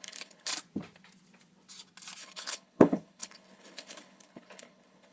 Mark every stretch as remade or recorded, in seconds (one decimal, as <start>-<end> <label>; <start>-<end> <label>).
0.0-0.5 remade; 0.5-2.2 recorded; 2.2-5.1 remade